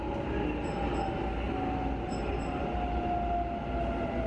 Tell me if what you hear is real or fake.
real